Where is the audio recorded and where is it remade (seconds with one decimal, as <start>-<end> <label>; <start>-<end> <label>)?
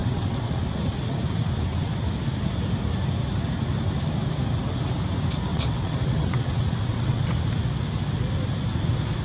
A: 0.0-0.6 remade; 0.6-5.5 recorded; 5.5-7.2 remade; 7.2-9.2 recorded